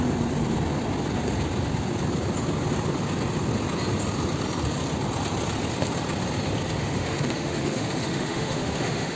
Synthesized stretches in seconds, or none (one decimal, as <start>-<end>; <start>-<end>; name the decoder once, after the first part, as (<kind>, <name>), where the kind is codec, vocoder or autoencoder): 6.7-9.2 (autoencoder, DAC-VAE)